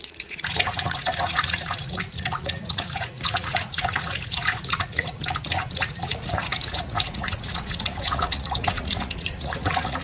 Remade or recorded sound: remade